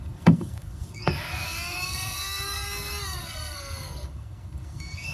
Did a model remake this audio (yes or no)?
yes